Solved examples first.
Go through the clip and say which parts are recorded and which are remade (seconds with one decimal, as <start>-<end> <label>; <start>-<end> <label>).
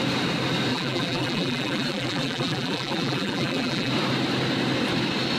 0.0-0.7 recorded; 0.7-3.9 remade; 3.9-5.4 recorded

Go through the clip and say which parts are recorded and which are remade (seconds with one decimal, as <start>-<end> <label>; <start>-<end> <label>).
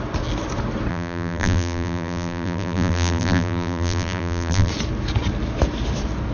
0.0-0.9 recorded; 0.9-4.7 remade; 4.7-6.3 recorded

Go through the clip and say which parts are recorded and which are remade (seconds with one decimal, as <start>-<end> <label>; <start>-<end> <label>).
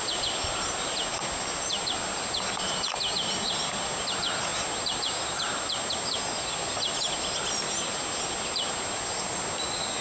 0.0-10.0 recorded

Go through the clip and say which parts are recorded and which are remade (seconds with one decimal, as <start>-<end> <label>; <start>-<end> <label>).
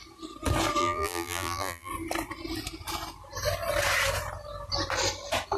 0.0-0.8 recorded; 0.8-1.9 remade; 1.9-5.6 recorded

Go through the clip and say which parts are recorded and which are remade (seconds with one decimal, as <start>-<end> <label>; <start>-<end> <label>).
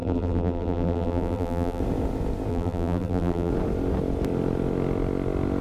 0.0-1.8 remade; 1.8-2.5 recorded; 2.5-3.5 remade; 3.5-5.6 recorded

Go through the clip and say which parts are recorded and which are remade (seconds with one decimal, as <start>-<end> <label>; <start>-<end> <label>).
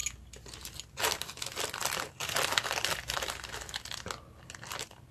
0.0-5.1 recorded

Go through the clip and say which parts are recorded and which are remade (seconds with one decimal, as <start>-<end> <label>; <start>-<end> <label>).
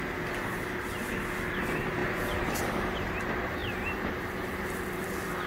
0.0-2.0 recorded; 2.0-3.2 remade; 3.2-3.6 recorded; 3.6-4.8 remade; 4.8-5.5 recorded